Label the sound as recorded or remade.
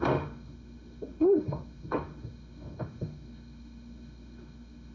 remade